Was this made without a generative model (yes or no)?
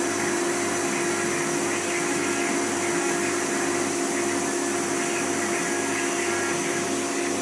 yes